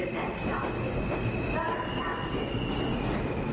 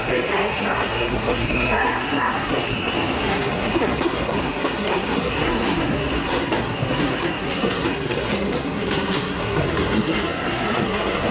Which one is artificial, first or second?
second